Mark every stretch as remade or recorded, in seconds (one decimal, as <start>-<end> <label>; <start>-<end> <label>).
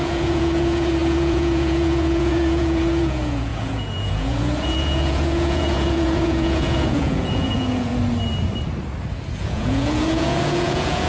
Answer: 0.0-7.9 remade; 7.9-9.4 recorded; 9.4-11.1 remade